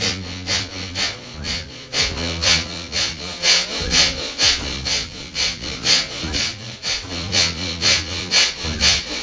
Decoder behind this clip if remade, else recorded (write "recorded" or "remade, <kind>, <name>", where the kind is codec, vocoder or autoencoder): remade, vocoder, Vocos